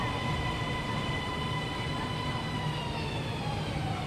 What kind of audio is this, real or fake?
real